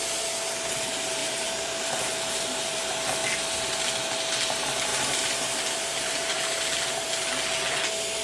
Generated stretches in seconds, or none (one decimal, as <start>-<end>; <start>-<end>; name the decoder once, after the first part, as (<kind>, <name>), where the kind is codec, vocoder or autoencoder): 1.2-2.8 (vocoder, BigVGAN v2); 4.9-7.1